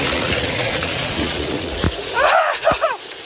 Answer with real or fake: fake